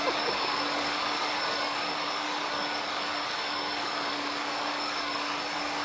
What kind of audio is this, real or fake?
fake